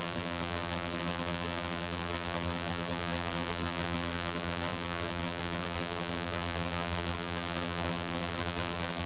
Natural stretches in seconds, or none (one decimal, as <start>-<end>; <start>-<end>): none